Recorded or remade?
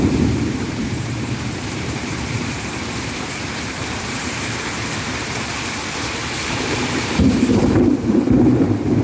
remade